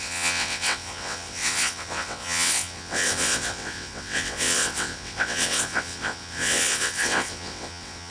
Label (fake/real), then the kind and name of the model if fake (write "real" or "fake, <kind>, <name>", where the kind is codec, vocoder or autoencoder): fake, vocoder, WaveNeXt